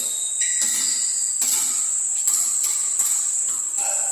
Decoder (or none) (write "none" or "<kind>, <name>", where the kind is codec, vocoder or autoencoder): none